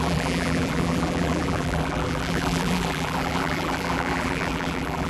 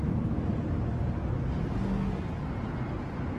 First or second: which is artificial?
first